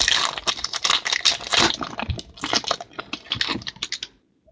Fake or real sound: real